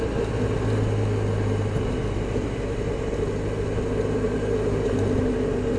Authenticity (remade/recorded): recorded